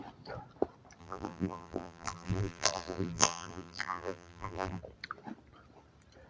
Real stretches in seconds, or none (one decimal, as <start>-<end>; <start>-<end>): 0.0-1.0; 4.8-6.3